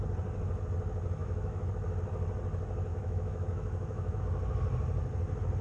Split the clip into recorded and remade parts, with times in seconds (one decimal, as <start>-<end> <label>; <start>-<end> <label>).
0.0-1.2 recorded; 1.2-1.7 remade; 1.7-2.9 recorded; 2.9-4.2 remade; 4.2-5.6 recorded